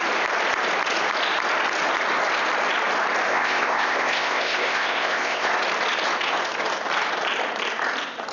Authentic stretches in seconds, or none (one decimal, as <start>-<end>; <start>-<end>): 0.0-3.3; 5.5-8.3